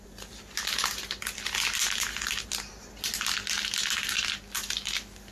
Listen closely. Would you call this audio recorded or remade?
recorded